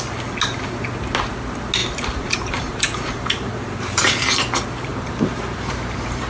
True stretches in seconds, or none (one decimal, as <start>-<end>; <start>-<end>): 0.0-1.8; 4.1-4.9